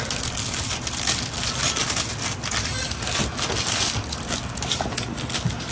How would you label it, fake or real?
real